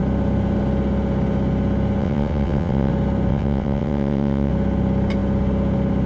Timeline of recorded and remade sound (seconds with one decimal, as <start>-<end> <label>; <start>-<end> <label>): 0.0-2.0 recorded; 2.0-2.9 remade; 2.9-3.3 recorded; 3.3-4.5 remade; 4.5-6.1 recorded